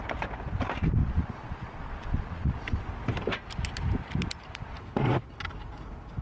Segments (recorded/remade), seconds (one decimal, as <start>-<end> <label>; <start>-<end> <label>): 0.0-1.0 recorded; 1.0-2.9 remade; 2.9-6.2 recorded

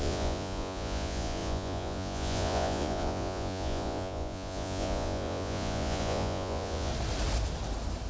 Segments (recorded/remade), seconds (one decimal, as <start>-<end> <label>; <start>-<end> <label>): 0.0-6.9 remade; 6.9-8.1 recorded